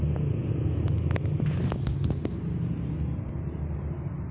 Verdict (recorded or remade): recorded